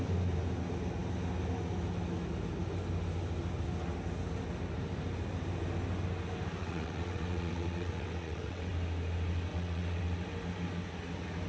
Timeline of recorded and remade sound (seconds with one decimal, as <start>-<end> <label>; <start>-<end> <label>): 0.0-6.6 recorded; 6.6-8.7 remade; 8.7-9.5 recorded; 9.5-10.0 remade; 10.0-11.5 recorded